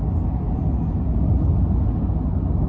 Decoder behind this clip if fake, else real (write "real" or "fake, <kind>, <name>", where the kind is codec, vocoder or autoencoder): real